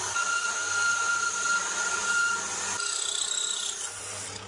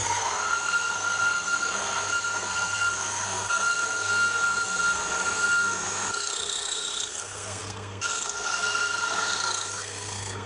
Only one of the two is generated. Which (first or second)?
second